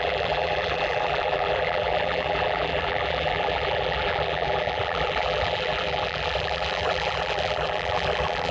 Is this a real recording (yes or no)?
no